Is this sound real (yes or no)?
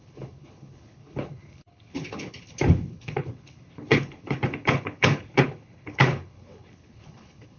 no